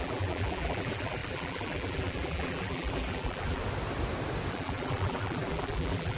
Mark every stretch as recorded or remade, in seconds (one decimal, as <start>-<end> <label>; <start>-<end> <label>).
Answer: 0.0-3.6 remade; 3.6-4.5 recorded; 4.5-6.2 remade